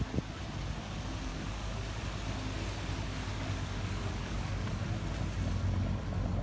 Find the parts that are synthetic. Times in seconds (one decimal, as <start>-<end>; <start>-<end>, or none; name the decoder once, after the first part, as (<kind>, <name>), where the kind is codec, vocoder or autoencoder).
1.3-2.0 (codec, DAC); 3.3-4.8